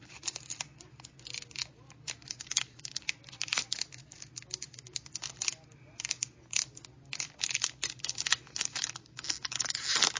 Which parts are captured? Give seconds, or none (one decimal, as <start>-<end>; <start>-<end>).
0.0-10.2